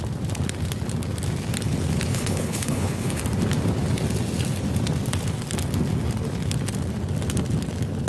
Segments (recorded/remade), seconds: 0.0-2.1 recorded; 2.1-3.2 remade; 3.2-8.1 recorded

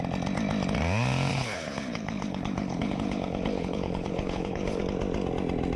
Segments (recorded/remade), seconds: 0.0-1.3 recorded; 1.3-4.8 remade; 4.8-5.8 recorded

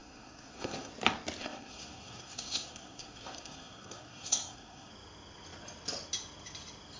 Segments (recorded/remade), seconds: 0.0-0.9 remade; 0.9-1.4 recorded; 1.4-4.9 remade; 4.9-7.0 recorded

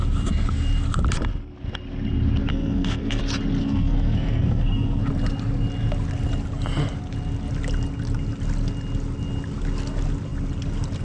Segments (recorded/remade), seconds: 0.0-2.5 recorded; 2.5-3.2 remade; 3.2-3.6 recorded; 3.6-5.0 remade; 5.0-11.0 recorded

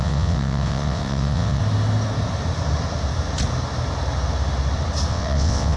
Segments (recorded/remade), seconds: 0.0-1.6 remade; 1.6-5.1 recorded; 5.1-5.8 remade

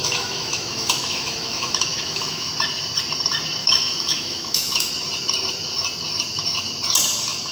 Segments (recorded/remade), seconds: 0.0-2.5 remade; 2.5-3.6 recorded; 3.6-4.9 remade; 4.9-7.5 recorded

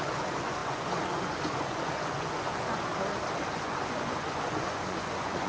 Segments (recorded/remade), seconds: 0.0-2.9 remade; 2.9-3.5 recorded; 3.5-5.5 remade